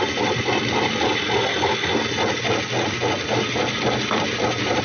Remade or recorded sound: recorded